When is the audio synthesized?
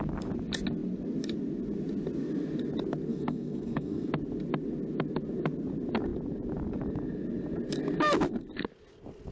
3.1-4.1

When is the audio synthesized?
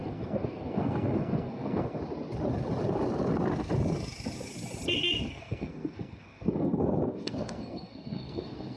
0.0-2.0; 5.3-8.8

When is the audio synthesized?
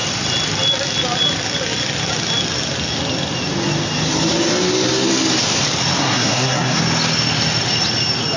6.0-6.8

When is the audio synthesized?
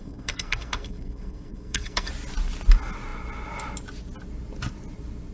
0.0-2.1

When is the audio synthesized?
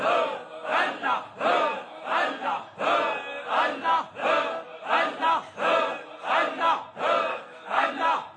7.3-7.9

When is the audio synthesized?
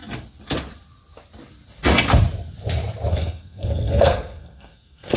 3.1-5.2